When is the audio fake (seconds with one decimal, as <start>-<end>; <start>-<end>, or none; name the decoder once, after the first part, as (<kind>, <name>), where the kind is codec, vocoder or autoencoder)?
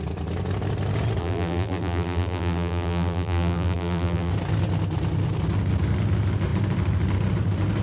1.2-4.3 (vocoder, BigVGAN v2)